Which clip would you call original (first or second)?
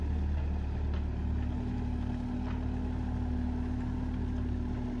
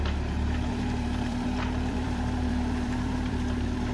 first